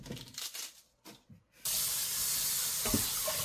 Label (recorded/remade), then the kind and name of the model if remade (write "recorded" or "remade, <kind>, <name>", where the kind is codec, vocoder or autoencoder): recorded